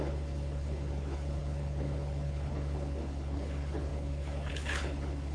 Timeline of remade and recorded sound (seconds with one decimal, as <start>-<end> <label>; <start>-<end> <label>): 0.0-5.3 remade